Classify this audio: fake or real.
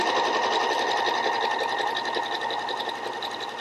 real